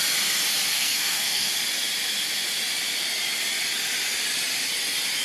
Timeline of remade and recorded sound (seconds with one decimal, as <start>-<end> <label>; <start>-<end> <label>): 0.0-0.7 recorded; 0.7-1.5 remade; 1.5-5.2 recorded